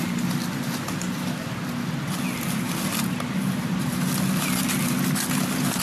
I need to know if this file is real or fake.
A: real